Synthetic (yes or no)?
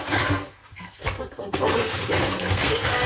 yes